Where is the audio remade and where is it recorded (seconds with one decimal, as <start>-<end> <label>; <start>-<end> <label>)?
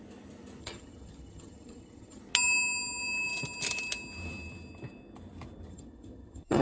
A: 0.0-0.6 recorded; 0.6-2.2 remade; 2.2-5.7 recorded; 5.7-6.6 remade